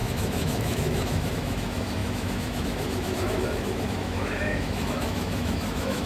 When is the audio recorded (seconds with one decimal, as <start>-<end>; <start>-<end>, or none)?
none